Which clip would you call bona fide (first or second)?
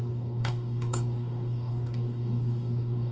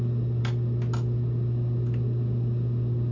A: second